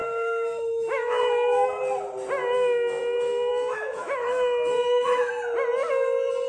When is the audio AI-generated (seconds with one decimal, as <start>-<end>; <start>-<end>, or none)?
0.0-1.8; 3.5-5.3